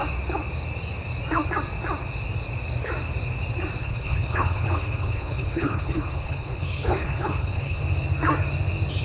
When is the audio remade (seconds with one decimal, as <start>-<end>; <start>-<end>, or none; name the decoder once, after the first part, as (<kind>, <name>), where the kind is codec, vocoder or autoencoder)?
3.8-7.8 (codec, HILCodec)